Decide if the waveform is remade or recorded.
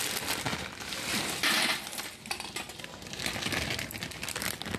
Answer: recorded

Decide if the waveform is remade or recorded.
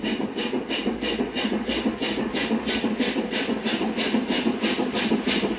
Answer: recorded